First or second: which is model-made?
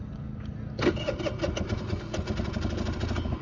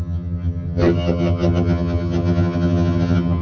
second